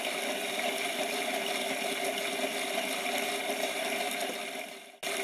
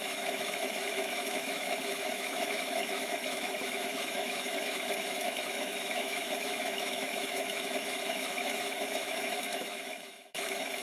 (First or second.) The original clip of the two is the first